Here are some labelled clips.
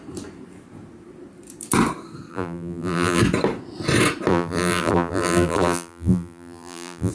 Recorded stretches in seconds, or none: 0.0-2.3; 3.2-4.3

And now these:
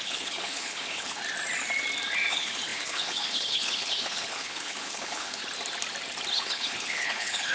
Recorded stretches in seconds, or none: 1.2-2.3; 5.4-6.3

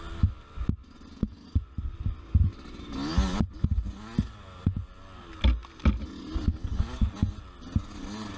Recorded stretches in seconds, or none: 0.0-8.4